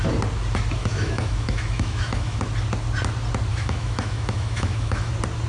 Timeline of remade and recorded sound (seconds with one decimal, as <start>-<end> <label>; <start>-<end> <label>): 0.0-0.8 recorded; 0.8-2.4 remade; 2.4-3.5 recorded; 3.5-5.1 remade; 5.1-5.5 recorded